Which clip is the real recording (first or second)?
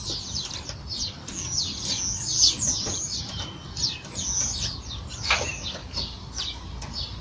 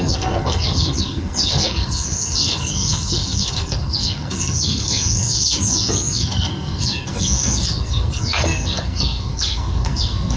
first